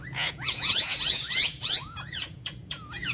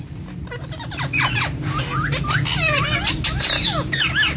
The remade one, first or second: first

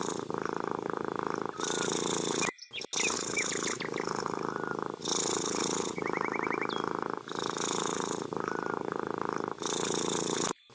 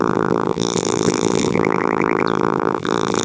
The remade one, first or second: second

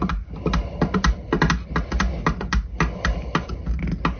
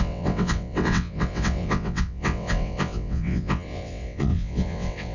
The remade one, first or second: second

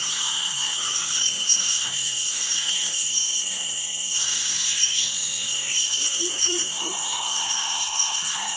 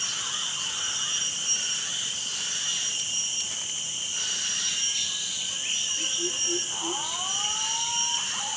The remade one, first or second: first